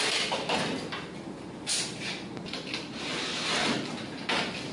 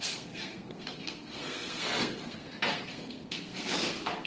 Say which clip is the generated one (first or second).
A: second